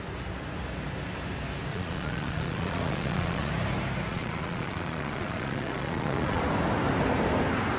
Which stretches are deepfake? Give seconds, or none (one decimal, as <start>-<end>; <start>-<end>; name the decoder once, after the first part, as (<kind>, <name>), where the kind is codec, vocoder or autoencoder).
1.7-3.5 (vocoder, Vocos); 4.1-6.4